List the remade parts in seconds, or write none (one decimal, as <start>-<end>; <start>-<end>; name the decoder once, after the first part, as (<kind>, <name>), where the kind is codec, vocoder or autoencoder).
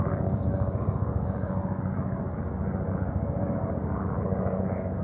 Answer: 0.0-1.6 (codec, DAC); 4.6-5.0